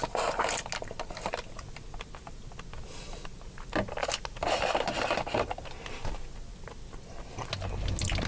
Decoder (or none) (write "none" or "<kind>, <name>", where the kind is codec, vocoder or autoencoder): none